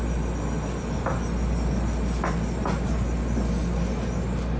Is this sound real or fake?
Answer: real